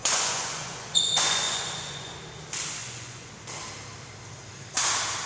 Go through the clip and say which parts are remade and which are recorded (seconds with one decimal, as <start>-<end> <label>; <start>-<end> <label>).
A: 0.0-2.2 remade; 2.2-2.8 recorded; 2.8-3.3 remade; 3.3-5.3 recorded